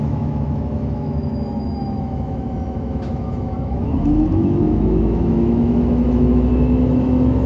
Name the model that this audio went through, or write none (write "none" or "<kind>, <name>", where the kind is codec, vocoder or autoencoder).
autoencoder, DAC-VAE